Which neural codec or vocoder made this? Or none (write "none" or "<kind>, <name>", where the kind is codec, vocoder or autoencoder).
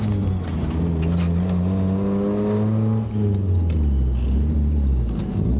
none